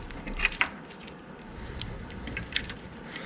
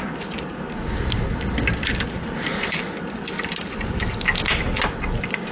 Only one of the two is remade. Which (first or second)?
first